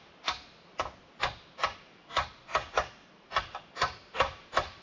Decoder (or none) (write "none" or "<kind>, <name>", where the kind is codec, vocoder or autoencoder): none